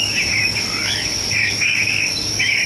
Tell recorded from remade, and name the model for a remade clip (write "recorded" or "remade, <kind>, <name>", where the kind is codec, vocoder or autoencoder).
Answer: remade, codec, DAC